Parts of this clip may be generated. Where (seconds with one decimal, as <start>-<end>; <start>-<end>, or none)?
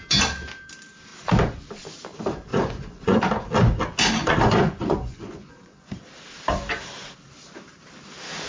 2.5-3.2; 4.2-5.9